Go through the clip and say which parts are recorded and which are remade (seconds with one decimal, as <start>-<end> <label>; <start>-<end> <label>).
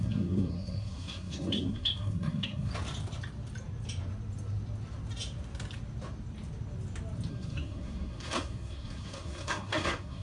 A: 0.0-2.7 remade; 2.7-7.3 recorded; 7.3-10.2 remade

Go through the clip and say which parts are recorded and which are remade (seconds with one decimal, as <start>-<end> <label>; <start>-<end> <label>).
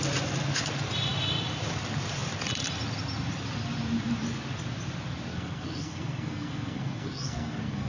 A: 0.0-5.3 recorded; 5.3-7.9 remade